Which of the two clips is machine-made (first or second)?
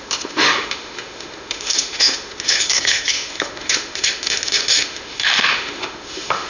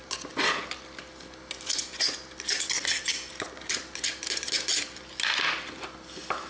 first